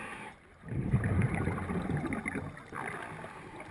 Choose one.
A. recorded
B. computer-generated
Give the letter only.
A